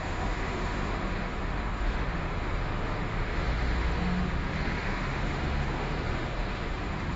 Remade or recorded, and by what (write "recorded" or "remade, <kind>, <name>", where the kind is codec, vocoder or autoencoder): remade, autoencoder, DAC-VAE